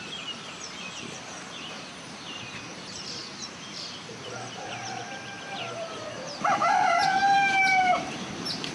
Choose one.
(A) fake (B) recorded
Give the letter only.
A